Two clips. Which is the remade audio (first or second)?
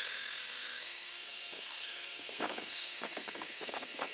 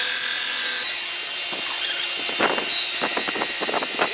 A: first